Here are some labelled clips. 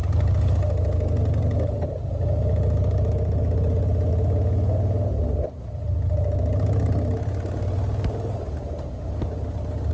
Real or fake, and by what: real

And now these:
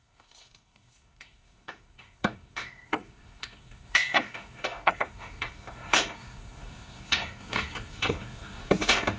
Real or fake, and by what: fake, codec, SNAC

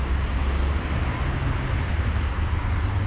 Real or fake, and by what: real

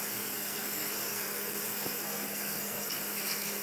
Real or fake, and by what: fake, codec, SNAC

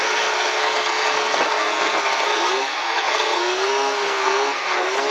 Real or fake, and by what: fake, codec, SNAC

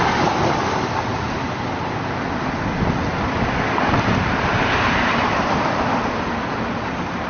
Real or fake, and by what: real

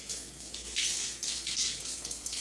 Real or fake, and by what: fake, codec, SNAC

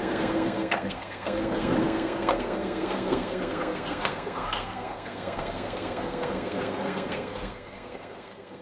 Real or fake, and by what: fake, codec, SNAC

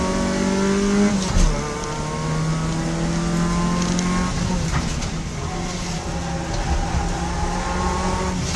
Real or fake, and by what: real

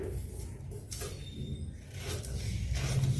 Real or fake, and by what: real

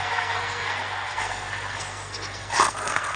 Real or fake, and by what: fake, codec, SNAC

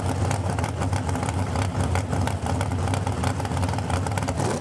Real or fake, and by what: real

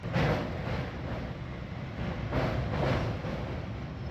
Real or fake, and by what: real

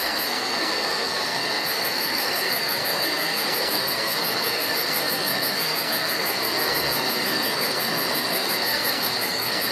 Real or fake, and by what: fake, codec, SNAC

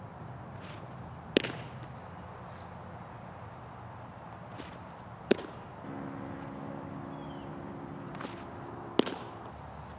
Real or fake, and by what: real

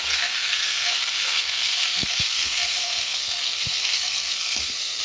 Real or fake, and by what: fake, codec, SNAC